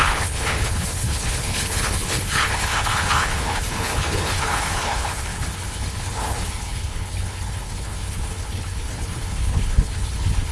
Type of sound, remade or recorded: remade